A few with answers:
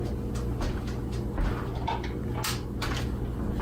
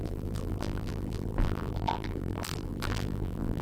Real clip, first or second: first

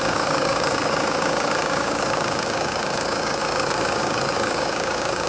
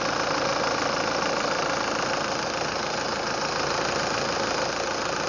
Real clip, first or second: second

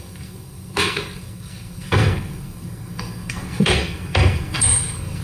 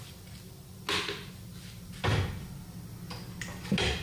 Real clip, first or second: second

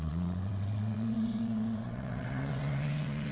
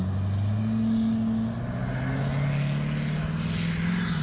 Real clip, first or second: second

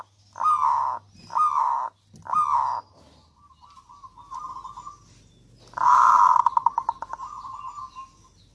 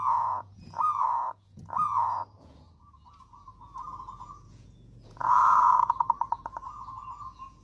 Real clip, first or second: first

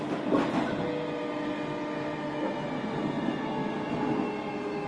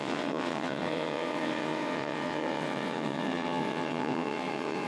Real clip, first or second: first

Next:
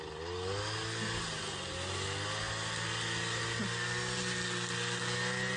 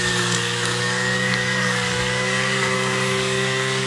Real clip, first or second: first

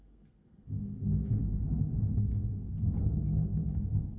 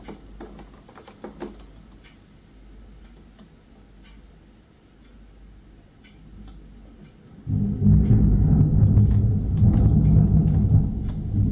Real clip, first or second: second